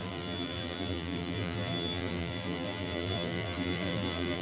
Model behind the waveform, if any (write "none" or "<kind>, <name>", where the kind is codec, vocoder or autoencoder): vocoder, BigVGAN v2